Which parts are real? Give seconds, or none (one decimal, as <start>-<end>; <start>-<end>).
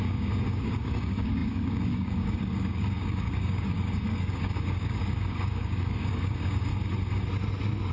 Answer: 6.7-7.9